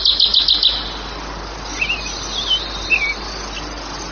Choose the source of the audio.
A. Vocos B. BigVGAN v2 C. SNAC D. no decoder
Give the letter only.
D